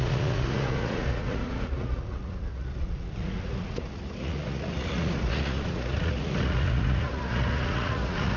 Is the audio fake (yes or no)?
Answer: yes